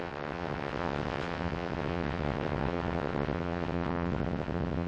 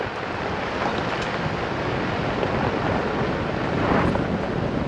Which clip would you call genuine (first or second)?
second